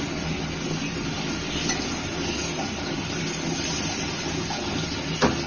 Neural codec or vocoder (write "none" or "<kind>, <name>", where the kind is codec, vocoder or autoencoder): none